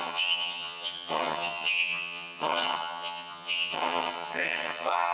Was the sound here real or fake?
fake